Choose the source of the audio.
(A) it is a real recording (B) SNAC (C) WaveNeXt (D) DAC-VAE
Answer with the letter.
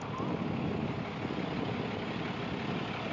A